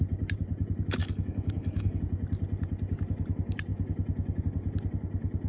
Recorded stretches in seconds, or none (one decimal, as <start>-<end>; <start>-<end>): 0.0-1.0; 2.0-5.5